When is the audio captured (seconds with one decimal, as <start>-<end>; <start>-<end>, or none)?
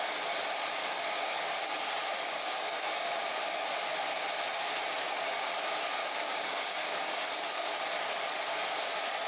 0.0-0.8; 3.1-6.0; 7.8-9.3